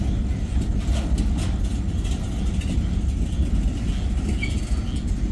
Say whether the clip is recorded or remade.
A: recorded